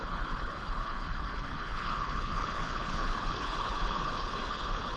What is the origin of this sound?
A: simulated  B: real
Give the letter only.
A